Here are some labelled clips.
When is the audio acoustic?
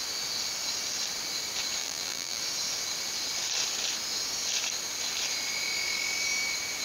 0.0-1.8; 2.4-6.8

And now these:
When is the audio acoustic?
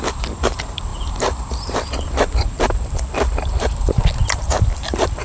none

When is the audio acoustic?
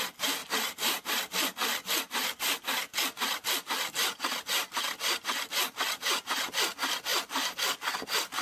0.0-0.4; 1.1-7.1; 7.9-8.4